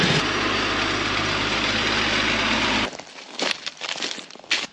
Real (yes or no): yes